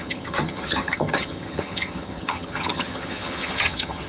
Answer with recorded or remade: remade